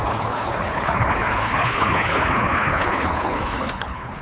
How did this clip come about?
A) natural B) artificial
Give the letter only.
B